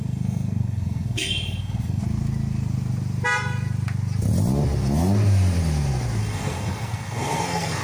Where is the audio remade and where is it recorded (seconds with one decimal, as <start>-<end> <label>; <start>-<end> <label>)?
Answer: 0.0-2.0 remade; 2.0-6.2 recorded; 6.2-7.8 remade